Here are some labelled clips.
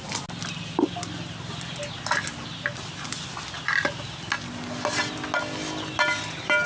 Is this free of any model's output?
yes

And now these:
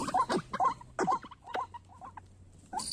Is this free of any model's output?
yes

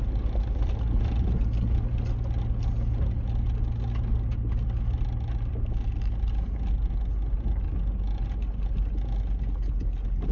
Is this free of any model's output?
yes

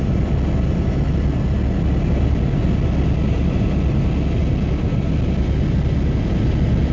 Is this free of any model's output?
yes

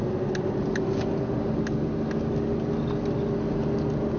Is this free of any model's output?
yes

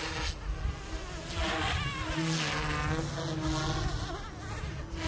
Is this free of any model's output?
yes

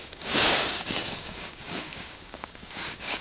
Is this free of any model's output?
no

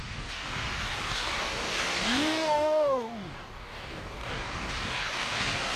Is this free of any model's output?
no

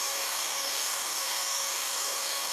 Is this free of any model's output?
no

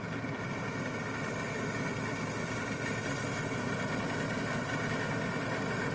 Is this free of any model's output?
yes